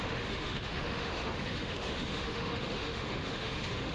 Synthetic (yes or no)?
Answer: yes